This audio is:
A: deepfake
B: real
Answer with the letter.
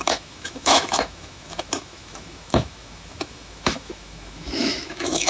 A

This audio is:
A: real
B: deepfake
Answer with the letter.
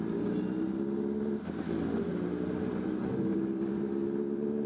A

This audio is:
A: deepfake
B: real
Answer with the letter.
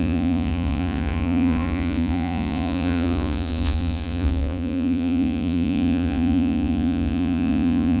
A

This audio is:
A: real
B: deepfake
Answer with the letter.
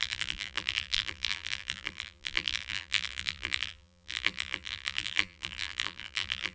B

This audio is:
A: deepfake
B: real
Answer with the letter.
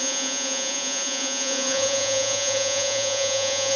A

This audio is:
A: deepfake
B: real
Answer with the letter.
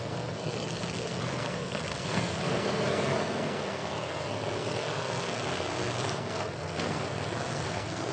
A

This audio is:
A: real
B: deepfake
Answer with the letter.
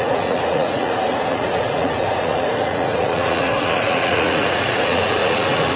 B